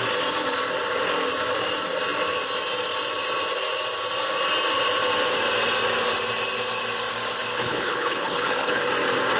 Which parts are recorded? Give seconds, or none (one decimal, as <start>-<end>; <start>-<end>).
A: 0.0-7.5; 8.8-9.4